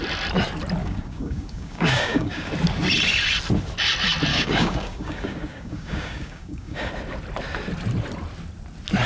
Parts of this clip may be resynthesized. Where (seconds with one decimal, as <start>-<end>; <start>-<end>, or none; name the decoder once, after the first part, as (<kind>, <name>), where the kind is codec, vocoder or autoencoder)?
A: 0.8-2.5 (codec, DAC); 4.3-6.9

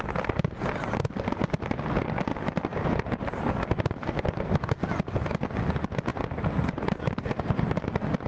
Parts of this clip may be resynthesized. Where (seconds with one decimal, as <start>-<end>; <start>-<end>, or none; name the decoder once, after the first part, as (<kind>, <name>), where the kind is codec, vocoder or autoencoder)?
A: 2.7-3.4 (vocoder, BigVGAN v2)

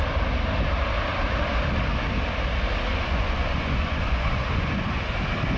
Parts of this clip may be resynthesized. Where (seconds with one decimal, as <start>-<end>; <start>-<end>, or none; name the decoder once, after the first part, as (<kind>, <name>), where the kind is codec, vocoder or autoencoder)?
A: 2.9-5.1 (vocoder, Vocos)

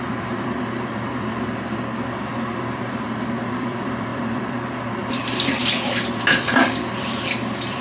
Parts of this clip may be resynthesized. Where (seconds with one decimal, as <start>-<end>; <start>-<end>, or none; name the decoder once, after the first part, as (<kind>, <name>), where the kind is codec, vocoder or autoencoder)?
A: 0.0-7.8 (vocoder, BigVGAN v2)